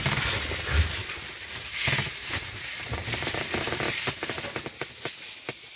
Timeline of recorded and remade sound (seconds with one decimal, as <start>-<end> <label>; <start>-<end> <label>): 0.0-1.0 recorded; 1.0-4.1 remade; 4.1-5.8 recorded